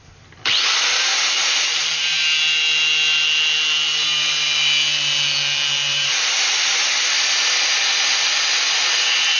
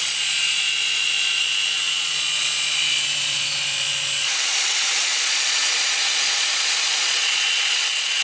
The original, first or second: first